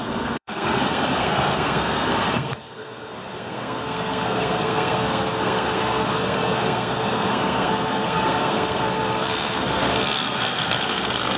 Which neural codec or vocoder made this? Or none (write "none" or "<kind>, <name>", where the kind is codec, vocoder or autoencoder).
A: codec, SNAC